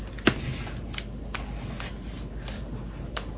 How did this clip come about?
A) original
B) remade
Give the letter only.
A